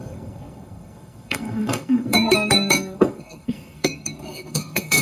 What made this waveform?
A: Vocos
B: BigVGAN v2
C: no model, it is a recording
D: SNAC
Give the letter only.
D